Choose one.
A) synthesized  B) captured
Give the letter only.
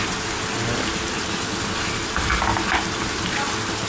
B